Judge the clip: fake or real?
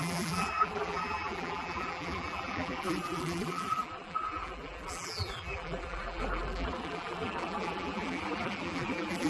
fake